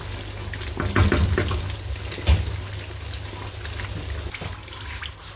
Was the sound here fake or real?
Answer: real